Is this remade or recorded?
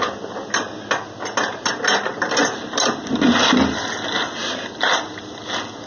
recorded